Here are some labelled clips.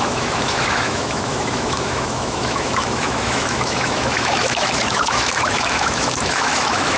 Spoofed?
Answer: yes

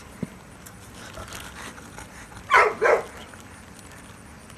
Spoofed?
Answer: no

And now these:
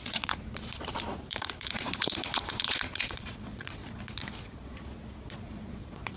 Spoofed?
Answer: yes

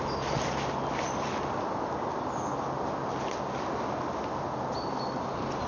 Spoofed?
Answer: no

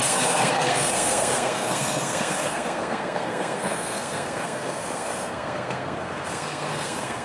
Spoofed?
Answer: yes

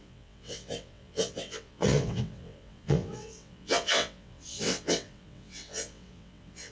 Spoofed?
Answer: yes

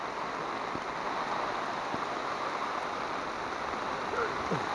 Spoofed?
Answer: no